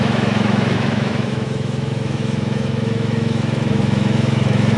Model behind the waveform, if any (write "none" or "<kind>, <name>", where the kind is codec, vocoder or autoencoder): autoencoder, DAC-VAE